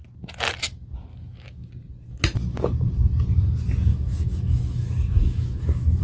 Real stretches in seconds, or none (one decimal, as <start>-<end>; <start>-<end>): 0.0-1.1; 1.7-3.9